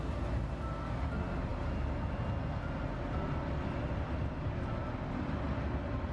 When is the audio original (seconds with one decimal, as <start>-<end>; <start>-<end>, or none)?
0.0-6.1